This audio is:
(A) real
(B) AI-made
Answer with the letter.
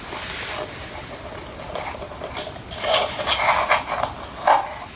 A